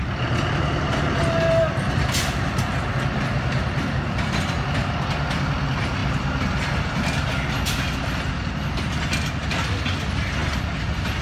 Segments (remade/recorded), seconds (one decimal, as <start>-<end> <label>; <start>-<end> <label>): 0.0-11.2 recorded